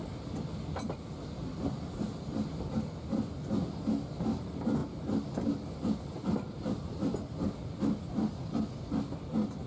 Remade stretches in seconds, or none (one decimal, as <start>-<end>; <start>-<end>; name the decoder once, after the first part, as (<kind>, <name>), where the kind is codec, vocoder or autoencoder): none